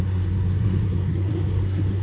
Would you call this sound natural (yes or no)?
no